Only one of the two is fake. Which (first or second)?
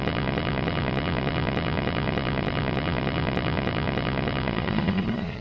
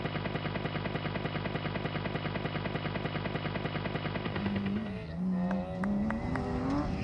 first